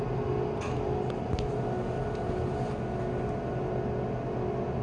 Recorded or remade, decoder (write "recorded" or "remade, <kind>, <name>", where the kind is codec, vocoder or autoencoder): recorded